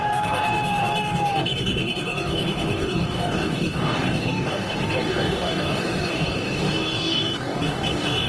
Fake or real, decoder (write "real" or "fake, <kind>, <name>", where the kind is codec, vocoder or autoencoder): fake, codec, DAC